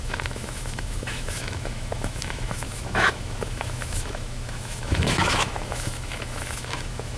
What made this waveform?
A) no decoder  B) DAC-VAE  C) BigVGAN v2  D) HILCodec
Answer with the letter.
B